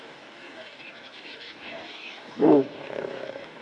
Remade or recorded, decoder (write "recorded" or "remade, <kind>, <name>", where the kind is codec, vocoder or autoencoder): remade, codec, DAC